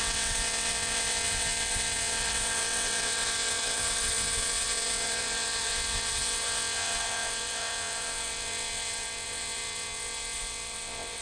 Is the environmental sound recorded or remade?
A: remade